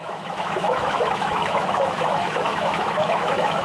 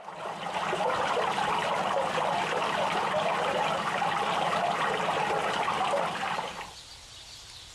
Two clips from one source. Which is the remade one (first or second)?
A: first